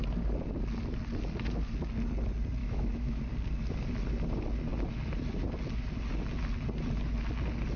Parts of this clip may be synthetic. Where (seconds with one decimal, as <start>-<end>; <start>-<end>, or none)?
2.6-3.2